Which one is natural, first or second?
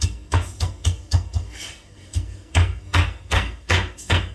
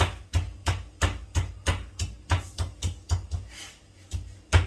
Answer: second